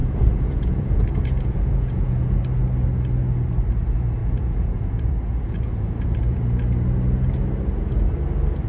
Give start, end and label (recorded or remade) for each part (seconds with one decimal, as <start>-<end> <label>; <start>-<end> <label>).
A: 0.0-2.4 remade; 2.4-4.2 recorded; 4.2-6.4 remade; 6.4-8.7 recorded